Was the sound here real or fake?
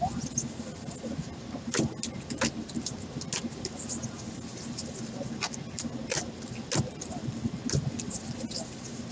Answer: real